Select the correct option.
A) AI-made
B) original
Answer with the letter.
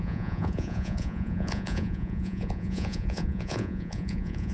A